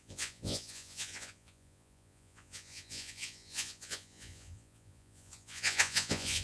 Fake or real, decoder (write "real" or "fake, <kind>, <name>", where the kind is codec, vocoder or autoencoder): fake, vocoder, Vocos